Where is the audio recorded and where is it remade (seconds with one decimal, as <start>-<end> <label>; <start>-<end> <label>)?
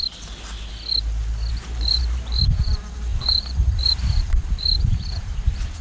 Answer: 0.0-1.5 recorded; 1.5-5.8 remade